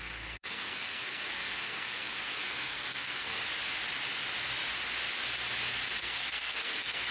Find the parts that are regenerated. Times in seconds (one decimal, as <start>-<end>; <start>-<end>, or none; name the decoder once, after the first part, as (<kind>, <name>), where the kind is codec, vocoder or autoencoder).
0.0-3.4 (codec, SNAC); 6.0-7.1